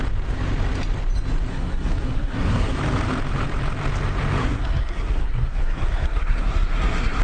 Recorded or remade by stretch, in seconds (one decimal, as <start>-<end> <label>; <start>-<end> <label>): 0.0-1.5 recorded; 1.5-2.8 remade; 2.8-4.4 recorded; 4.4-7.2 remade